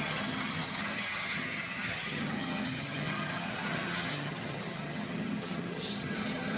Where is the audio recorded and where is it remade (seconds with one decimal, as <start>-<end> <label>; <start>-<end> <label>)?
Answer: 0.0-6.6 remade